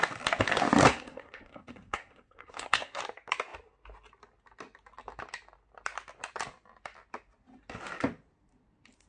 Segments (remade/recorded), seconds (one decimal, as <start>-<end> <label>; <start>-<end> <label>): 0.0-0.9 recorded; 0.9-3.0 remade; 3.0-9.1 recorded